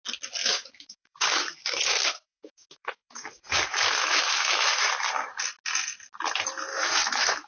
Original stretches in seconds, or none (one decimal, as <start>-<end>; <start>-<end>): 0.0-0.4; 4.9-6.7